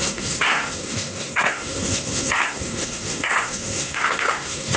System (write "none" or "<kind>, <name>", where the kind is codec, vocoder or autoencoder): codec, SNAC